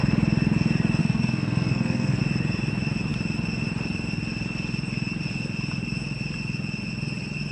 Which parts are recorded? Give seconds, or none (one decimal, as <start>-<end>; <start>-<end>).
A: 0.0-1.0; 2.2-7.5